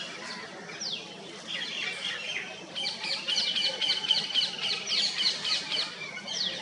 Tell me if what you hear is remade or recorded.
remade